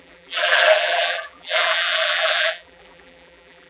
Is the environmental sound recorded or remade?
remade